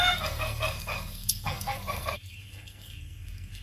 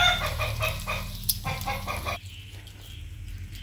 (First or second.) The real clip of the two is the second